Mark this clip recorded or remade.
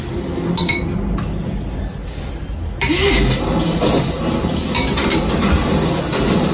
recorded